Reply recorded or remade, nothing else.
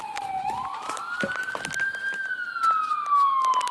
recorded